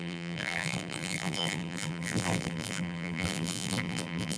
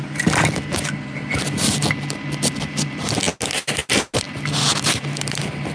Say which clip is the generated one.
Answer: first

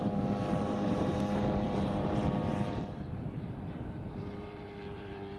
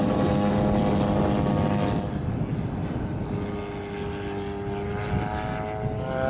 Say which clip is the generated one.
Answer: first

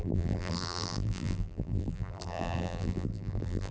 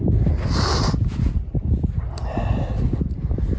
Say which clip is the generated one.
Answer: first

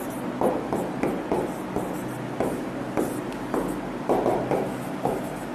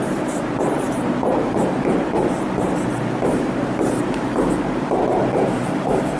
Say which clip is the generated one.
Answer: second